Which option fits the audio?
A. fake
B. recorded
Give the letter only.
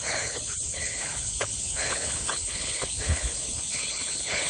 A